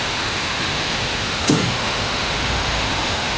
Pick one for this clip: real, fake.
fake